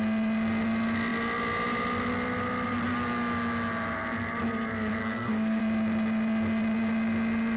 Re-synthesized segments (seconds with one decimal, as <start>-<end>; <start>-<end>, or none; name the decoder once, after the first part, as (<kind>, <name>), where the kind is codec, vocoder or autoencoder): 5.0-5.6 (codec, SNAC)